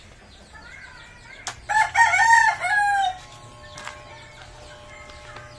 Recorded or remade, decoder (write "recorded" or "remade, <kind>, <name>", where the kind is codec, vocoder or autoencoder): recorded